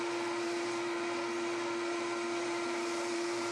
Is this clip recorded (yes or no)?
no